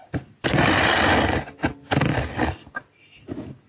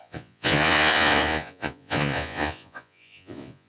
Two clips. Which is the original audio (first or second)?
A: first